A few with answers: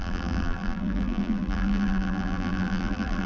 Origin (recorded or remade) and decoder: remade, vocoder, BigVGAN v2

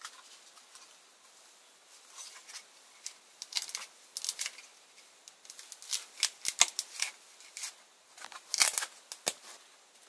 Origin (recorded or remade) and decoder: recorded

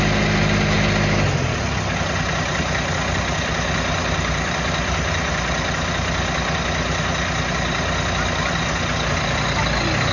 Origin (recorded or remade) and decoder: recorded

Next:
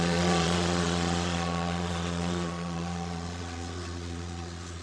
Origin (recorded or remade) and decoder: remade, vocoder, Vocos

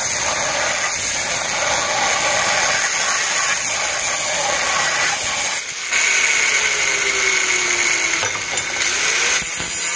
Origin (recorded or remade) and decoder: recorded